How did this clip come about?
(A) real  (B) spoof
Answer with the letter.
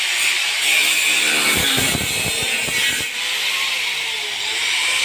A